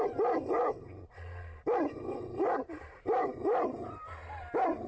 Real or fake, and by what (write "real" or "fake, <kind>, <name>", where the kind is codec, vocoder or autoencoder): real